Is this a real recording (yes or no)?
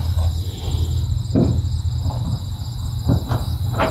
yes